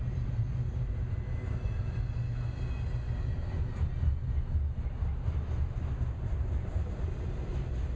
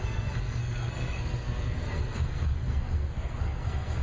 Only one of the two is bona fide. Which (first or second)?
first